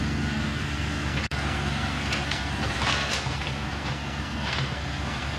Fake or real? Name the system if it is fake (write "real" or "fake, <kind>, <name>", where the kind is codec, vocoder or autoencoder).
fake, codec, SNAC